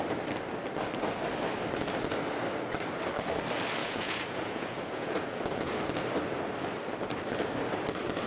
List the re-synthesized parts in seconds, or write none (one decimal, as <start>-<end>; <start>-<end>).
3.8-5.8